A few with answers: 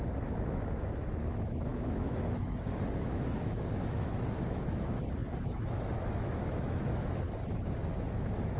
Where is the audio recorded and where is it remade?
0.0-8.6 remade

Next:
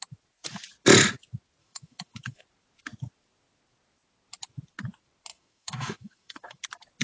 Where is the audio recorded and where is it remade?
0.0-1.6 recorded; 1.6-2.4 remade; 2.4-5.3 recorded; 5.3-6.6 remade; 6.6-7.0 recorded

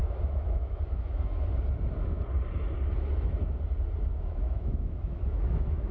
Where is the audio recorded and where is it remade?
0.0-1.5 remade; 1.5-4.1 recorded; 4.1-5.9 remade